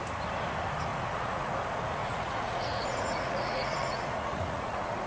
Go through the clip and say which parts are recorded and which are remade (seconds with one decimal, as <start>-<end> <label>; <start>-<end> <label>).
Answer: 0.0-0.9 recorded; 0.9-1.5 remade; 1.5-2.0 recorded; 2.0-5.1 remade